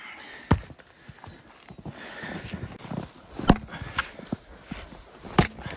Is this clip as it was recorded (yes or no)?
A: yes